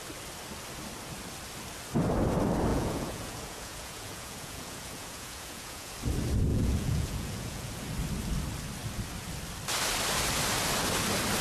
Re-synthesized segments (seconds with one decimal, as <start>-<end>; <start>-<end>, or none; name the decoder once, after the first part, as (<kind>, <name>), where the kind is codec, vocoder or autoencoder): 2.7-5.9 (vocoder, Vocos); 6.5-7.7